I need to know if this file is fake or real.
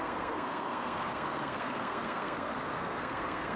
fake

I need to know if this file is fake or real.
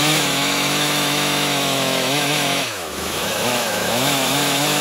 fake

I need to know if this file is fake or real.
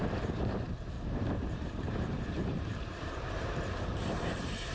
fake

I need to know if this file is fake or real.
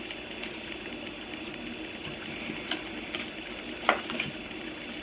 real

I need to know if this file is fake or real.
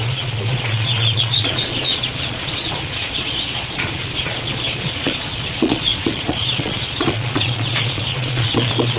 fake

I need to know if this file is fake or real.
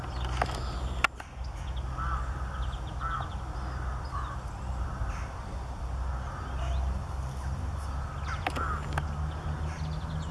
real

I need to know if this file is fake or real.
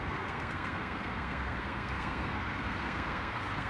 fake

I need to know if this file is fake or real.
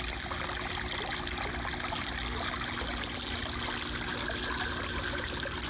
real